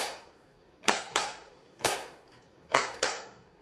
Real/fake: fake